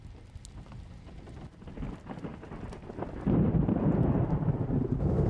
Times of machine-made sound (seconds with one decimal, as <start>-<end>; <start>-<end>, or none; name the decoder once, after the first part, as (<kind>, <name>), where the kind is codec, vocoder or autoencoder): 2.3-4.3 (vocoder, BigVGAN v2)